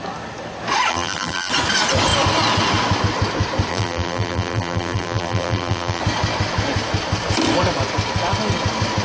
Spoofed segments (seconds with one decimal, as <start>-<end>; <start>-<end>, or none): 0.9-1.5; 3.7-6.0

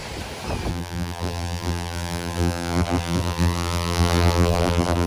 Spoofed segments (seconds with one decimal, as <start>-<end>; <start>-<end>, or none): 0.7-5.1

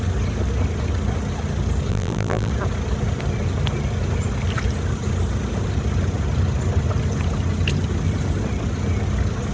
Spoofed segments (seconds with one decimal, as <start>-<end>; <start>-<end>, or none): 1.9-2.5

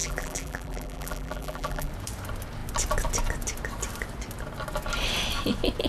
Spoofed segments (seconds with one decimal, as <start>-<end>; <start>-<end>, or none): 0.0-1.9

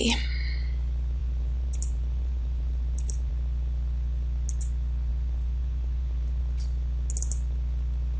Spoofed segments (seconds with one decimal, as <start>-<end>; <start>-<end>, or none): 1.2-3.3; 5.1-6.4

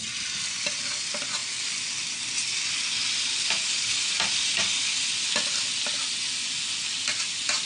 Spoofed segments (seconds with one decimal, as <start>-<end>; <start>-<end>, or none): none

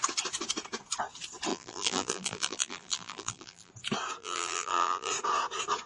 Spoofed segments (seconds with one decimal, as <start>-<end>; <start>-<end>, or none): 1.5-3.7; 4.2-5.1

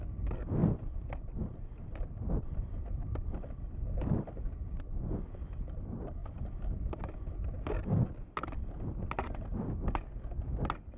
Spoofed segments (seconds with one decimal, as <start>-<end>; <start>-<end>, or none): 0.6-4.8; 6.2-8.2